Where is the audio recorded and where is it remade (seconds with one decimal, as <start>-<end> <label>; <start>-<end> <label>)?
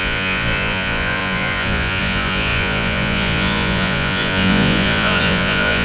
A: 0.0-5.8 remade